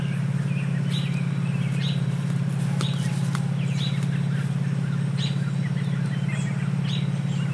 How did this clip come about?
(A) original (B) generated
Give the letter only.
A